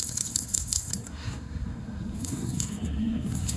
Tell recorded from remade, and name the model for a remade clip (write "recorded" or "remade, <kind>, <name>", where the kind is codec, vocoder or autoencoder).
remade, codec, SNAC